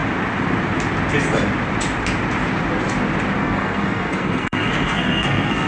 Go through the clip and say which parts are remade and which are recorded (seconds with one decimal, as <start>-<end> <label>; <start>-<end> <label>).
0.0-3.4 recorded; 3.4-5.7 remade

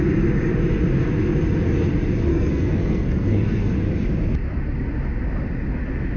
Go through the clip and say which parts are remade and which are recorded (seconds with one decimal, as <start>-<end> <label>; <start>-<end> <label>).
0.0-2.3 recorded; 2.3-3.7 remade; 3.7-6.2 recorded

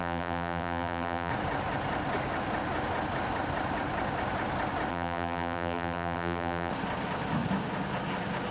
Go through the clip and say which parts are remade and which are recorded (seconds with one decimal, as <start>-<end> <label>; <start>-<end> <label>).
0.0-1.3 remade; 1.3-4.9 recorded; 4.9-6.7 remade; 6.7-8.5 recorded